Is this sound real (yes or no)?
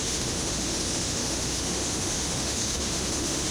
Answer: no